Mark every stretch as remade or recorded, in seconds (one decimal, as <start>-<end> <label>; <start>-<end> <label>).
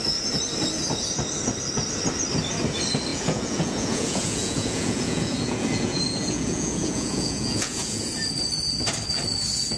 0.0-3.1 recorded; 3.1-8.1 remade; 8.1-9.8 recorded